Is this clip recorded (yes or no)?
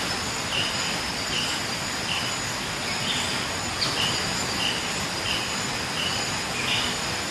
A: yes